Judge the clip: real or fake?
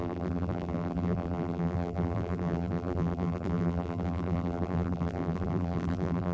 fake